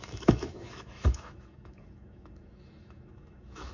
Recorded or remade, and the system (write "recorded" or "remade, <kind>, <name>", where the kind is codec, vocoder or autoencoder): remade, autoencoder, DAC-VAE